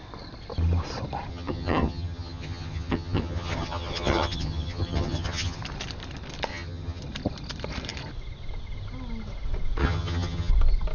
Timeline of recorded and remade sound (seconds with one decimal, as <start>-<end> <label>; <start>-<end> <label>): 0.0-1.3 recorded; 1.3-5.6 remade; 5.6-6.5 recorded; 6.5-7.0 remade; 7.0-9.8 recorded; 9.8-10.5 remade; 10.5-10.9 recorded